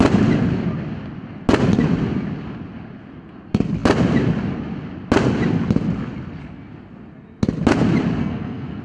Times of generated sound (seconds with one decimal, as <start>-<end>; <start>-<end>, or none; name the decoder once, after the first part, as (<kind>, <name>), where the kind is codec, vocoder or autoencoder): 8.2-8.8 (codec, SNAC)